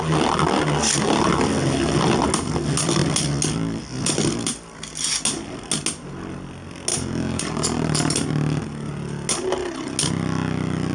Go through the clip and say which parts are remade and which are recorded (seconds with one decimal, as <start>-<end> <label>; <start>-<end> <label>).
0.0-6.9 recorded; 6.9-7.4 remade; 7.4-10.9 recorded